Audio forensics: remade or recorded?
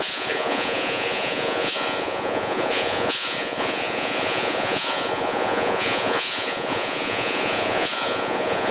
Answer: remade